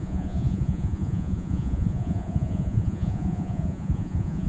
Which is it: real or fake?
fake